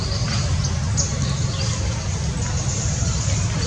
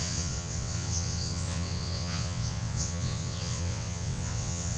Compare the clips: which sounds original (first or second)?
first